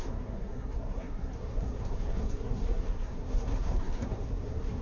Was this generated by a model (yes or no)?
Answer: yes